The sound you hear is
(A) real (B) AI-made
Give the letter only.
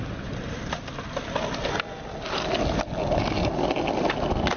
A